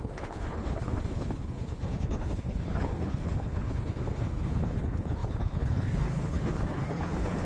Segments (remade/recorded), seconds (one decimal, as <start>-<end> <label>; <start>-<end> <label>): 0.0-7.5 remade